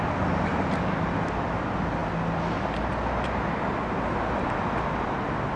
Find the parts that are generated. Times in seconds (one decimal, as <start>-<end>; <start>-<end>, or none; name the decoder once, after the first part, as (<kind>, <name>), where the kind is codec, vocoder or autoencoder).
none